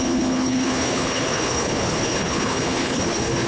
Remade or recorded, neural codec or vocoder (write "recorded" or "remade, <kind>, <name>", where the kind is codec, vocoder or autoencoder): remade, codec, HILCodec